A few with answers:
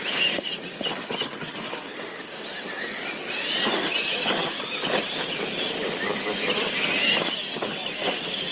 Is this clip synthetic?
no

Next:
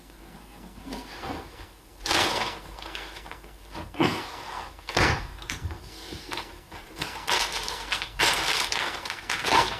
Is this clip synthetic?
yes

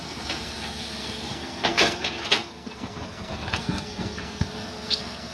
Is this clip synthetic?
yes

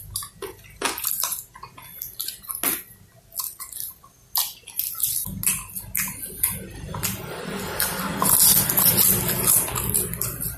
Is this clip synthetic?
no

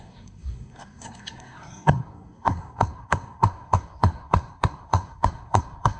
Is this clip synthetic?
yes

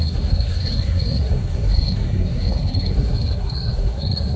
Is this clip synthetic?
yes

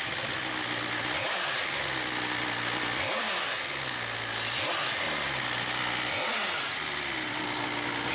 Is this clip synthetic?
no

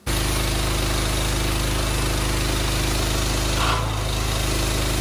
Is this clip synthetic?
no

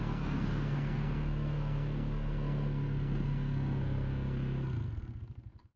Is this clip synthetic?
yes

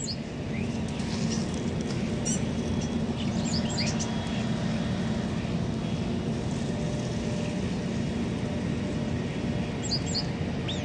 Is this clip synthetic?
no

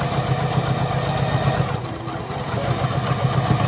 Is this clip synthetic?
no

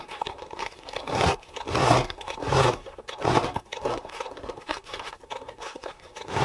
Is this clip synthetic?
yes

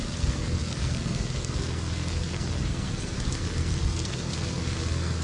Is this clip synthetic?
yes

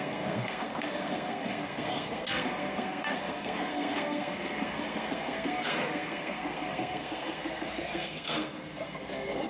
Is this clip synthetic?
yes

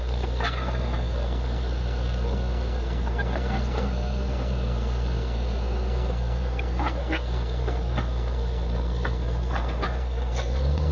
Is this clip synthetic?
yes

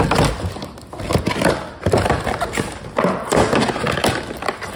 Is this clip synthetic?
no